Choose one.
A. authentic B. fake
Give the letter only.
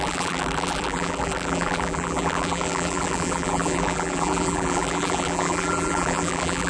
B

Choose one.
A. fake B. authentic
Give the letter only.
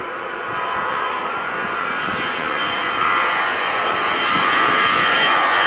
A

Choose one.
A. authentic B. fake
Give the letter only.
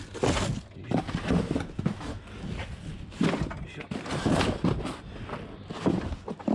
A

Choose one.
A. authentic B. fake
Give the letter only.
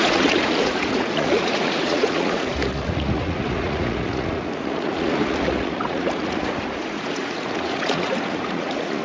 B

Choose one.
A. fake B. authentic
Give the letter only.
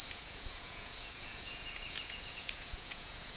A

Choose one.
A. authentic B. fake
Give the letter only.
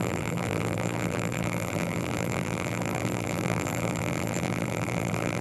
B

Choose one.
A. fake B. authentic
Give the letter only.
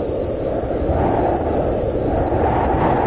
B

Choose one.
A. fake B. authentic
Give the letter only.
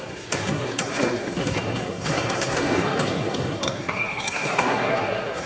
A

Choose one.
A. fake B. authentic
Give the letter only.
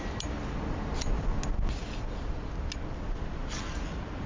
B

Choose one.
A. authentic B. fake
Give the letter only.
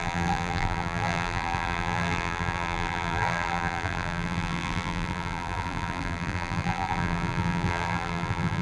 B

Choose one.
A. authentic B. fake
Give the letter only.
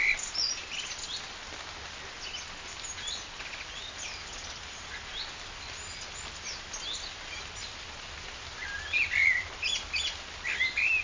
A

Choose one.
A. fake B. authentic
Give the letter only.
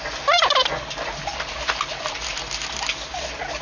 B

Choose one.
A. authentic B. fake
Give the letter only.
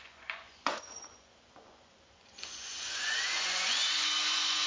B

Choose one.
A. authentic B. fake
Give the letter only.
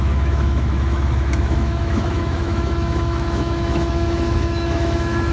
B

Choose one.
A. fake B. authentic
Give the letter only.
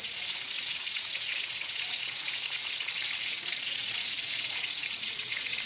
A